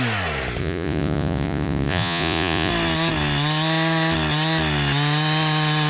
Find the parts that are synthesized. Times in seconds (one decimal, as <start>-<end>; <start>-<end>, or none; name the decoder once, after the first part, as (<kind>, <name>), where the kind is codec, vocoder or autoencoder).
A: 0.6-2.7 (vocoder, Vocos)